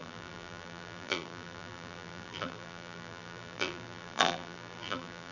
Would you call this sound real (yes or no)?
no